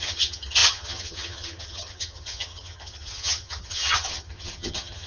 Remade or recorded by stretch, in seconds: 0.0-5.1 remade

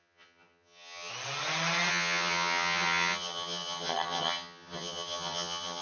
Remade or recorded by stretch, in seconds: 0.0-1.1 remade; 1.1-1.9 recorded; 1.9-5.8 remade

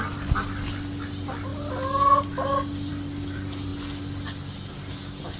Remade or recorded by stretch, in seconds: 0.0-5.4 recorded

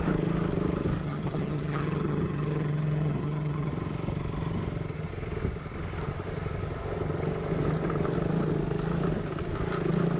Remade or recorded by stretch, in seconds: 0.0-1.0 recorded; 1.0-3.7 remade; 3.7-10.2 recorded

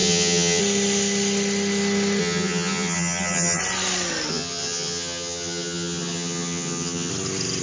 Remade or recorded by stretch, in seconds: 0.0-0.6 remade; 0.6-2.2 recorded; 2.2-3.6 remade; 3.6-4.3 recorded; 4.3-7.1 remade; 7.1-7.6 recorded

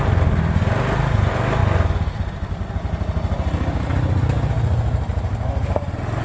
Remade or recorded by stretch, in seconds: 0.0-6.2 recorded

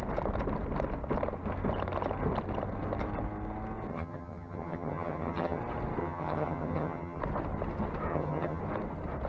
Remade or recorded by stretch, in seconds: 0.0-3.9 recorded; 3.9-5.6 remade; 5.6-6.0 recorded; 6.0-7.2 remade; 7.2-8.1 recorded; 8.1-8.6 remade; 8.6-9.3 recorded

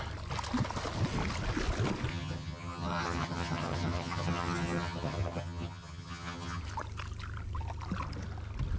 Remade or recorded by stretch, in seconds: 0.0-2.1 recorded; 2.1-6.6 remade; 6.6-8.8 recorded